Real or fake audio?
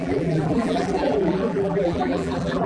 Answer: fake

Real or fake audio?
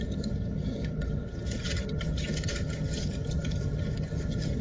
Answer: fake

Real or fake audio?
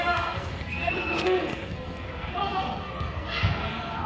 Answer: fake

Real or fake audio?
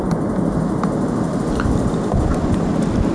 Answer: real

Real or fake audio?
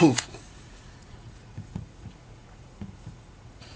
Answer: fake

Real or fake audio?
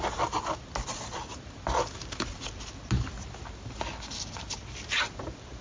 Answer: real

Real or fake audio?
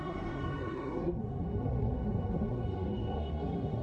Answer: fake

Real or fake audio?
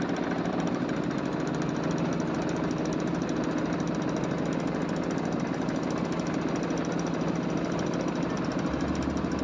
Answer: real